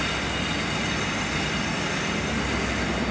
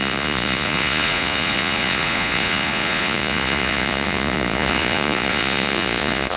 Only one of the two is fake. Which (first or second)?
second